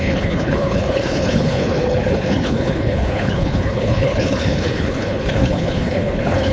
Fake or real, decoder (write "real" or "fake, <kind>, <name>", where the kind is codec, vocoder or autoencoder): fake, codec, HILCodec